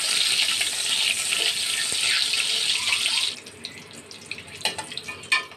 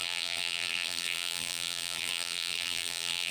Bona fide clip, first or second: first